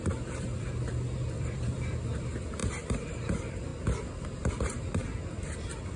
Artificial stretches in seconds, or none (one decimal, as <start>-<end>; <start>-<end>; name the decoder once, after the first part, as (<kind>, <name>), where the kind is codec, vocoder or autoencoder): 0.0-3.7 (vocoder, BigVGAN v2); 4.2-5.0